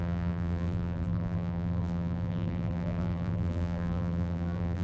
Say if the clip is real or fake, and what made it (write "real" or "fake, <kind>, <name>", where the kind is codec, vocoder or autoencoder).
fake, vocoder, BigVGAN v2